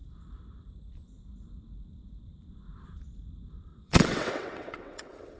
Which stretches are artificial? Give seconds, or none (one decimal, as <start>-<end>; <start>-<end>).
3.7-5.4

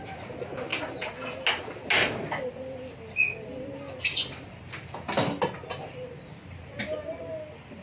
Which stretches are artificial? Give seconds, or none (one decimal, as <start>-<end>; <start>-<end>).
none

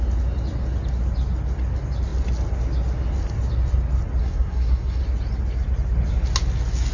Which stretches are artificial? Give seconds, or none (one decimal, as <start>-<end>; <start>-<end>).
4.2-5.0

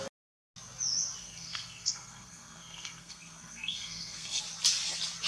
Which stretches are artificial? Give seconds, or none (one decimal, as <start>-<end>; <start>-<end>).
1.2-4.4

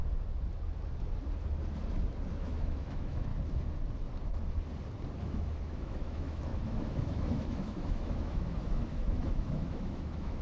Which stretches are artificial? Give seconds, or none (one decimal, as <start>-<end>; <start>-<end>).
2.4-3.3; 5.2-10.4

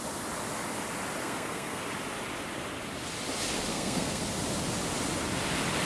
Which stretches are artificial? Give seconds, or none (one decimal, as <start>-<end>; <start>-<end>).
1.2-1.8; 3.7-4.2

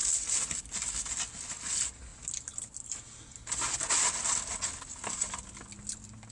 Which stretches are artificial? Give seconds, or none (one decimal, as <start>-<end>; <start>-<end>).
0.0-0.6; 2.1-3.2

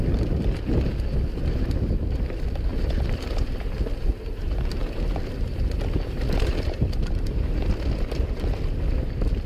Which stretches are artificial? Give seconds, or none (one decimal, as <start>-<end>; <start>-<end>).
2.7-3.9; 4.8-7.7